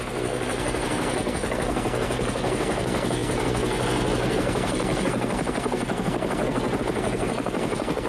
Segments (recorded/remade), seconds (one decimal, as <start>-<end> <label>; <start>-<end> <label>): 0.0-8.1 remade